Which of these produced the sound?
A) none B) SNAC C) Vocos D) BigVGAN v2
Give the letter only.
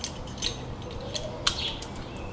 A